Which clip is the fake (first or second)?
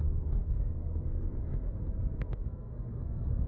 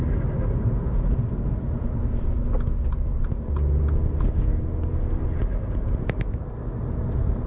first